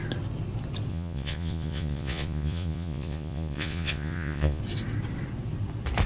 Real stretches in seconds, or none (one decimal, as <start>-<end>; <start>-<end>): 0.0-0.9; 4.6-6.1